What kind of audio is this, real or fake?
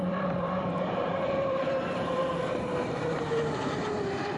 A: fake